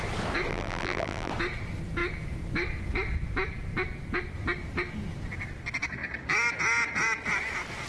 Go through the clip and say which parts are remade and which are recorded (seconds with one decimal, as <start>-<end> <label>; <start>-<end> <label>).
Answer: 0.0-0.5 recorded; 0.5-1.3 remade; 1.3-7.9 recorded